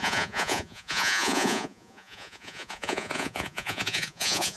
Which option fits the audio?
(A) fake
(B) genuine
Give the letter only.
A